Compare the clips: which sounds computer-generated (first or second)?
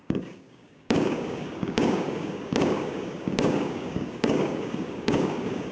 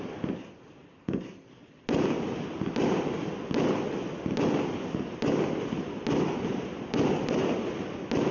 first